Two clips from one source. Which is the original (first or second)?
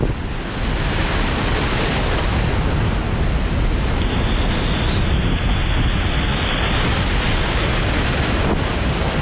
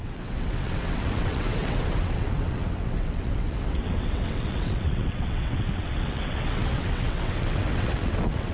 first